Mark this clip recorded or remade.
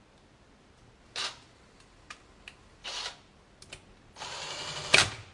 recorded